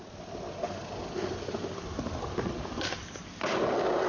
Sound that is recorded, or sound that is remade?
recorded